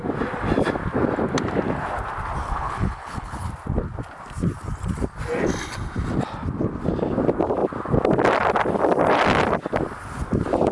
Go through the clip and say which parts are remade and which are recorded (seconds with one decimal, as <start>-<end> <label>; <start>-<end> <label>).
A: 0.0-2.4 recorded; 2.4-3.5 remade; 3.5-10.7 recorded